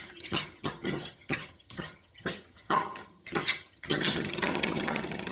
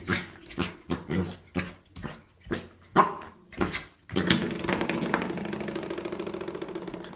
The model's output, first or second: first